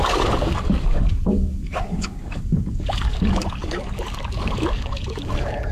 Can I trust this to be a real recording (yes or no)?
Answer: no